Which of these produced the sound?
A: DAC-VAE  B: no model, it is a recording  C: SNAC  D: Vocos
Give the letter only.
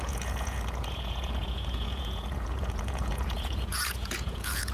D